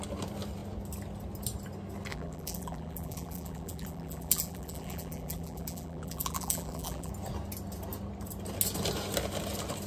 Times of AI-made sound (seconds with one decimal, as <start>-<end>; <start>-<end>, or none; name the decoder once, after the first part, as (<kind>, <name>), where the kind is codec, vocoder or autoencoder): 2.1-7.1 (vocoder, BigVGAN v2)